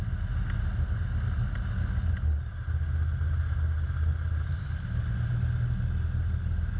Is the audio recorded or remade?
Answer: recorded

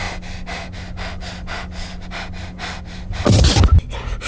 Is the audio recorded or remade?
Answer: recorded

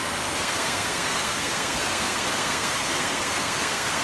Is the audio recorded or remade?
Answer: remade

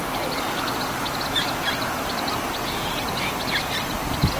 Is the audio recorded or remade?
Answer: recorded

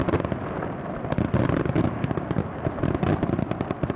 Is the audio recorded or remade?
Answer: recorded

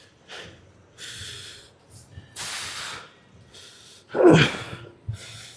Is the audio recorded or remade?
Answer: recorded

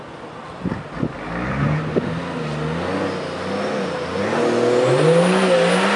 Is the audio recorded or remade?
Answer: recorded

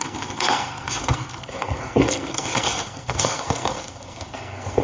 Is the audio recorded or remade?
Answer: remade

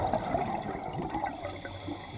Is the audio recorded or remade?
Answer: recorded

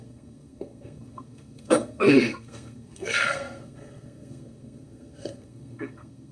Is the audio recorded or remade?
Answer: remade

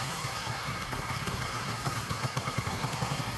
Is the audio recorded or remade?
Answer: remade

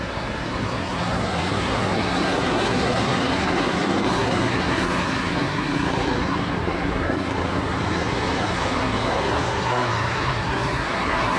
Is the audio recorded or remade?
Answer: remade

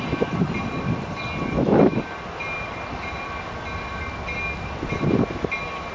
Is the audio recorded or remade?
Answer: recorded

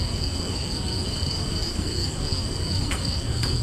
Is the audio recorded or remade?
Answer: remade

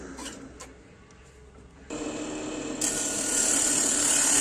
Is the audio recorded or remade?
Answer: recorded